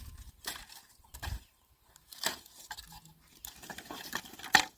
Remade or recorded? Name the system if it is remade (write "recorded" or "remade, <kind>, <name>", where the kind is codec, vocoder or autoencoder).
remade, vocoder, BigVGAN v2